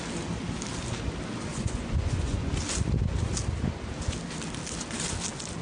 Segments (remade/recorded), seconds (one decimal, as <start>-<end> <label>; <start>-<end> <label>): 0.0-1.5 recorded; 1.5-2.5 remade; 2.5-5.6 recorded